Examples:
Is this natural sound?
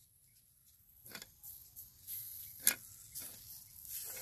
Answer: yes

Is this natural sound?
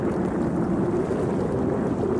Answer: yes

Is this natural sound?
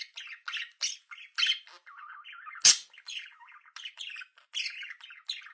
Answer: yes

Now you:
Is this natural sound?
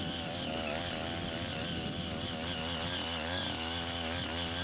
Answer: yes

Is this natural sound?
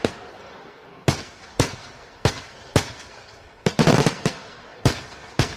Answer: no